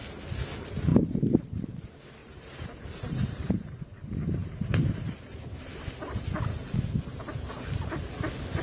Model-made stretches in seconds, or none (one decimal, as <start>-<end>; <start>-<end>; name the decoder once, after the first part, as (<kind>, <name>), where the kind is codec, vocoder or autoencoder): 2.2-3.8 (vocoder, BigVGAN v2)